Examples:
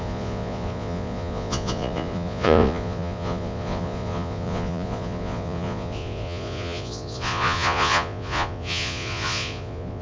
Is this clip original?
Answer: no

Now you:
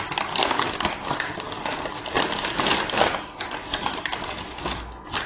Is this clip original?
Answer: yes